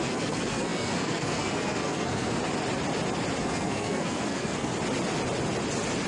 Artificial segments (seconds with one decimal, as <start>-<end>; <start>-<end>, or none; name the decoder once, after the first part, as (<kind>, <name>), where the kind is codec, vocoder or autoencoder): 0.0-2.4 (codec, SNAC); 3.4-4.7